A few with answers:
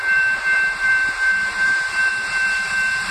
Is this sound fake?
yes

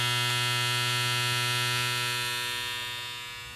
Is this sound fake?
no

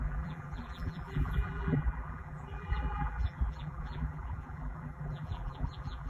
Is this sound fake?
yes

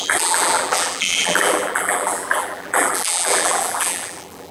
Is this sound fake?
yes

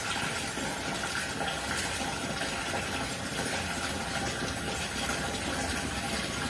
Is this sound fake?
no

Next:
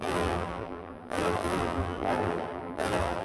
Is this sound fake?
yes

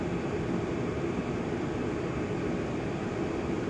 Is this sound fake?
no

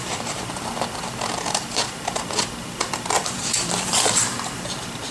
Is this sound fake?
yes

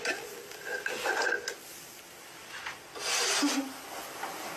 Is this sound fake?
no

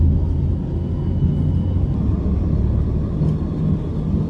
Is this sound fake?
no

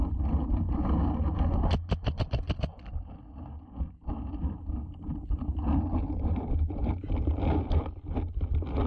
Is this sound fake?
no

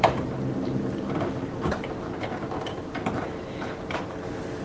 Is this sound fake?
yes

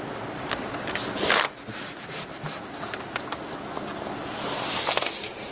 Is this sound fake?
no